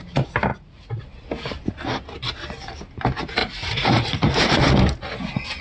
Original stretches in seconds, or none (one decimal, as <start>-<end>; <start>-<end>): 0.0-0.5; 1.0-3.4; 4.6-5.6